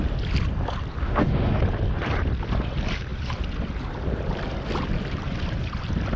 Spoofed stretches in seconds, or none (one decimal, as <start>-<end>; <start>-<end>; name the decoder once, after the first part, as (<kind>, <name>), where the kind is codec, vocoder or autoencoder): 1.0-1.6 (autoencoder, DAC-VAE)